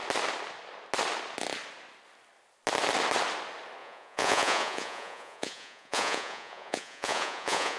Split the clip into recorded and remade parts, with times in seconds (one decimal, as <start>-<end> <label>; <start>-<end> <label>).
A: 0.0-3.8 recorded; 3.8-7.8 remade